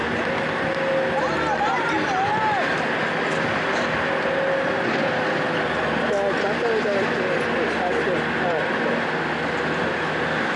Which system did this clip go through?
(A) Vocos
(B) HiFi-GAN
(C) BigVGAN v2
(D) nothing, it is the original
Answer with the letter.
D